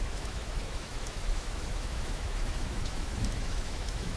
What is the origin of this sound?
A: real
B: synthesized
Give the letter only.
B